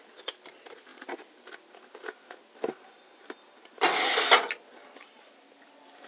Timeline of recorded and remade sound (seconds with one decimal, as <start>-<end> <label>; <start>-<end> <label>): 0.0-6.1 recorded